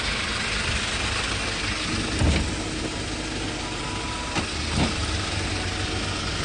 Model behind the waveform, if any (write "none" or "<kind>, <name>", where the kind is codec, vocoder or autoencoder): none